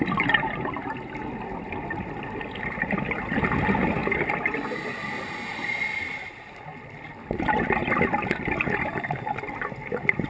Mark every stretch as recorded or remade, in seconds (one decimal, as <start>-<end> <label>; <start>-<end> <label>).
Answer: 0.0-10.3 recorded